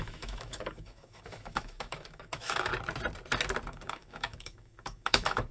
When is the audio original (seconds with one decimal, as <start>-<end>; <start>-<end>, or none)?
2.7-3.7

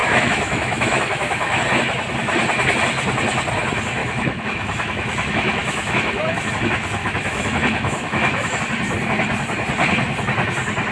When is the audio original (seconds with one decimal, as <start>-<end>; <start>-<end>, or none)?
1.6-4.0; 6.5-7.0; 8.6-10.9

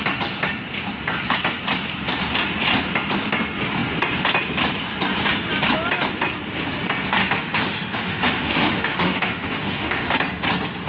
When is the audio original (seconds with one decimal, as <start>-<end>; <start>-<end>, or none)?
0.0-7.2; 10.1-10.9

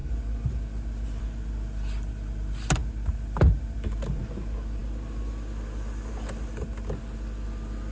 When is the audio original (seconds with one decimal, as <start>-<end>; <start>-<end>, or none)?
0.0-7.9